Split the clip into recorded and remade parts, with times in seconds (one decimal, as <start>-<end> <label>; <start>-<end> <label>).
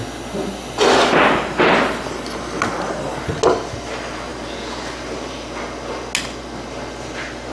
0.0-7.5 recorded